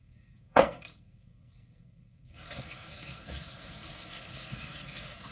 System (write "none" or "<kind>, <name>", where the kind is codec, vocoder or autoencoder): codec, SNAC